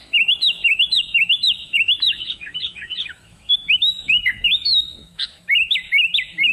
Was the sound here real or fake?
fake